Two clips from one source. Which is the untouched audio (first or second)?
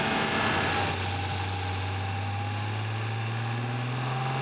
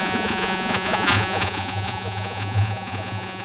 first